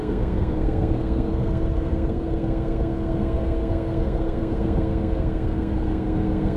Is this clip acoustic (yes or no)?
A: no